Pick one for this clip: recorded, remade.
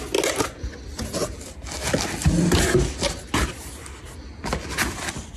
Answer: recorded